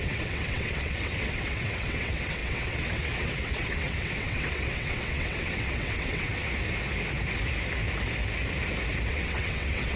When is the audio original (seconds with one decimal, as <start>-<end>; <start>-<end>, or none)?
6.3-9.1